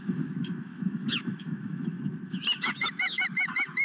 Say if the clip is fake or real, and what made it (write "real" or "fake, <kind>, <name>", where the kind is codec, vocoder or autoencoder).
fake, autoencoder, DAC-VAE